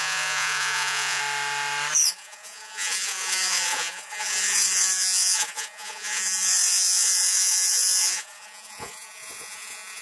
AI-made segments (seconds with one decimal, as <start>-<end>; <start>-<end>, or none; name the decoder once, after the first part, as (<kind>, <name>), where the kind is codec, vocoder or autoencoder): 0.0-1.2 (vocoder, Vocos); 2.1-10.0